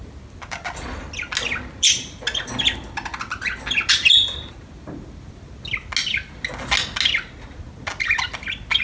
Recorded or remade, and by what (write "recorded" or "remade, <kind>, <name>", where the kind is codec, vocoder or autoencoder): recorded